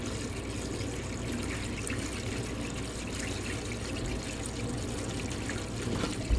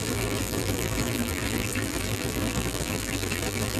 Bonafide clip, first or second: first